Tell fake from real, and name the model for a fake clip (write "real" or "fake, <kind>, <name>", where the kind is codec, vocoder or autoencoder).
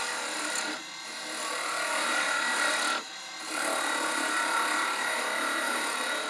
fake, vocoder, BigVGAN v2